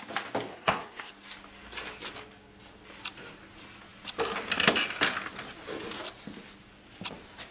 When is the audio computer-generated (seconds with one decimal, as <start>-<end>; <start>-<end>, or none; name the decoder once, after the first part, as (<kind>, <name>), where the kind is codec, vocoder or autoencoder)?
0.5-1.1 (codec, SNAC)